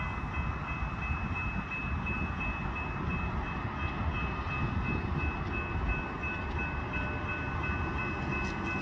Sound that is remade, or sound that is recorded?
recorded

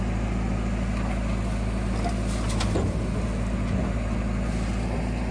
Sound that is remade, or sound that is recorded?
recorded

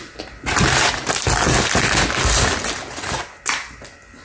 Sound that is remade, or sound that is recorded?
recorded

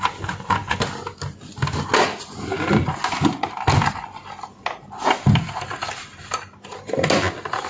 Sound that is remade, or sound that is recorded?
recorded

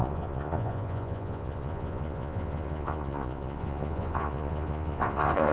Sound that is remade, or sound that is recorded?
remade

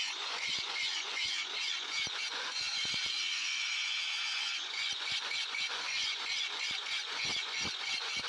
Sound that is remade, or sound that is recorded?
remade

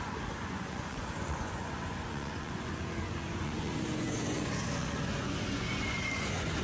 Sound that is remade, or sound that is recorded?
remade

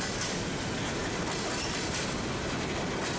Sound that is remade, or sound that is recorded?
recorded